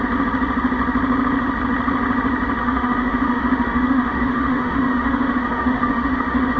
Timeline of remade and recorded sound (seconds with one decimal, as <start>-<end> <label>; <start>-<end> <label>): 0.0-2.6 recorded; 2.6-6.6 remade